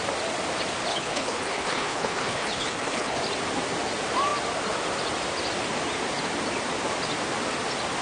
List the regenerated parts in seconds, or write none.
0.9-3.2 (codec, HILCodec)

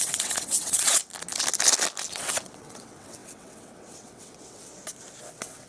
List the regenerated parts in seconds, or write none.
0.0-1.0 (vocoder, WaveNeXt); 2.1-4.7; 5.3-5.7

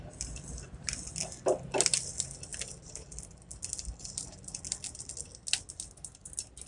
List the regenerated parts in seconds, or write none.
none